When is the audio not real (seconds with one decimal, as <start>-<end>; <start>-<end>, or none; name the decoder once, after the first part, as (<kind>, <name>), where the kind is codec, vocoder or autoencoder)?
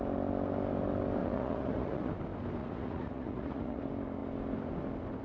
1.2-2.1 (vocoder, Vocos); 2.6-3.8